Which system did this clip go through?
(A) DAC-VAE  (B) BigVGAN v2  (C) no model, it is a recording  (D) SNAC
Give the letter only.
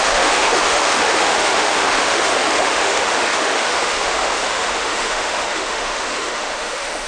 A